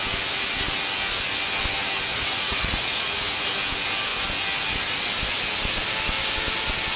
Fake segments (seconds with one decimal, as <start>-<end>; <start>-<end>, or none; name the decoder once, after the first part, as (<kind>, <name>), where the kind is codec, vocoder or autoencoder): 2.1-3.5 (vocoder, Vocos)